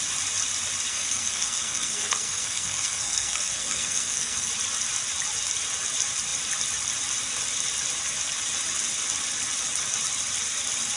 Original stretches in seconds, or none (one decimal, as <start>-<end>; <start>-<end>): 0.0-0.9; 4.5-11.0